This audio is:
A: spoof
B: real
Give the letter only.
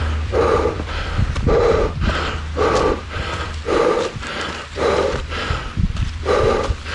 A